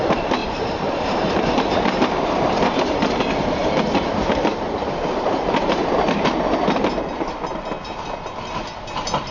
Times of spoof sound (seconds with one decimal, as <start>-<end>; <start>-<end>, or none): 0.4-3.2; 3.6-5.2